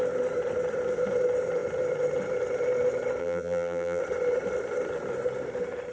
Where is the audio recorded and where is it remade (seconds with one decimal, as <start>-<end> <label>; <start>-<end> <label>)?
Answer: 0.0-3.2 recorded; 3.2-4.0 remade; 4.0-5.9 recorded